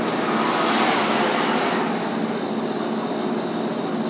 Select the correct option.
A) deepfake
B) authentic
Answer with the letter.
B